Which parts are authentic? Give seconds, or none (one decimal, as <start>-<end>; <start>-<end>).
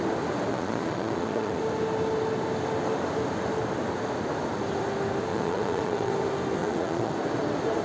0.0-0.5; 1.6-5.3; 6.1-6.6; 7.1-7.8